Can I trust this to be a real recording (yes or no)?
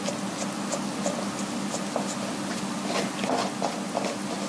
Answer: yes